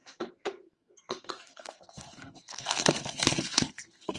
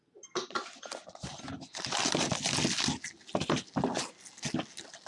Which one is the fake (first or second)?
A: first